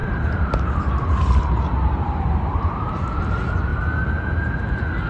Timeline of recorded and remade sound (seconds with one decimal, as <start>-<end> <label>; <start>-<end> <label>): 0.0-3.1 remade; 3.1-5.1 recorded